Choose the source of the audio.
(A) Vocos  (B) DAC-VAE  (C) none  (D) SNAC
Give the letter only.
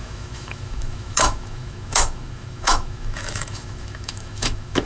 B